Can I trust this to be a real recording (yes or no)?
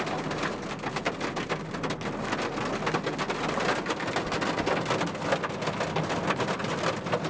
yes